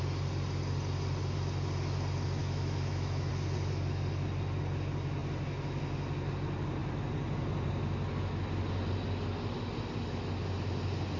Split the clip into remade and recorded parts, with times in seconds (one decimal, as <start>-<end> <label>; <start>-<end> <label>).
0.0-2.4 recorded; 2.4-3.3 remade; 3.3-11.2 recorded